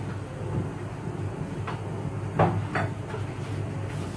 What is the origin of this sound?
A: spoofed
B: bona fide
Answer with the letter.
B